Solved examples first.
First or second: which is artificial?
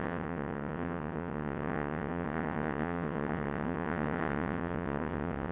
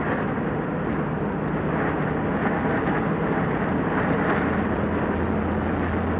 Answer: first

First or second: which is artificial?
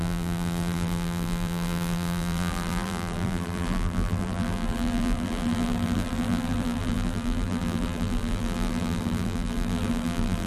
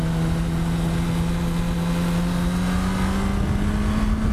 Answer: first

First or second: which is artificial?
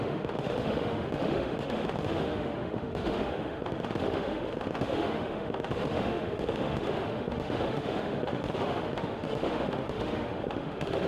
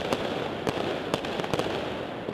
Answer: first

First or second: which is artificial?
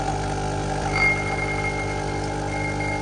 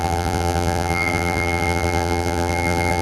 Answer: second